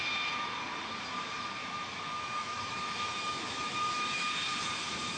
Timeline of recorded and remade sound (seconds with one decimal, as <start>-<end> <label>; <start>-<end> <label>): 0.0-1.6 recorded; 1.6-4.3 remade; 4.3-5.2 recorded